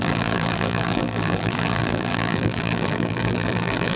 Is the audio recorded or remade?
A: remade